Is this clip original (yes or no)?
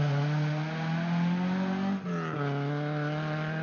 yes